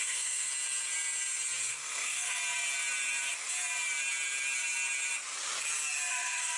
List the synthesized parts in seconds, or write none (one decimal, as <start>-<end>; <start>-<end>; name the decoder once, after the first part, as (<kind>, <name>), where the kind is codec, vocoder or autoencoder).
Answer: 0.0-0.5 (codec, SNAC); 1.7-2.4; 6.1-6.6